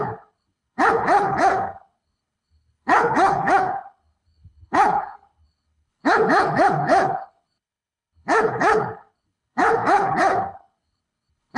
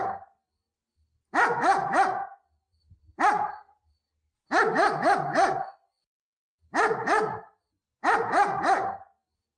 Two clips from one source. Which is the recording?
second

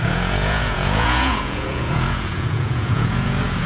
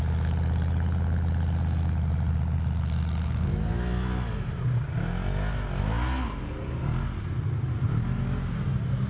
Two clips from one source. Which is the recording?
second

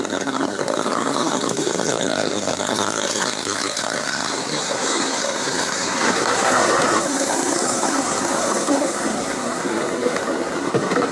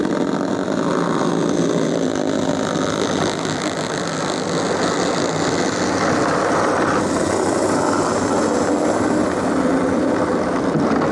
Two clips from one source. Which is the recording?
second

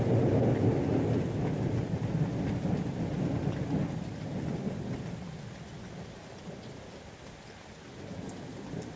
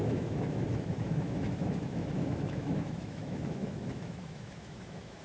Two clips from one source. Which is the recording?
first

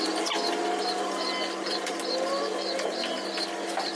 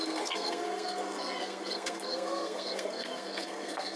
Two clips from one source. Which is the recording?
first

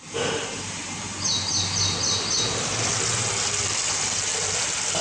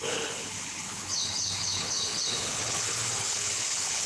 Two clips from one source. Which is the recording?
first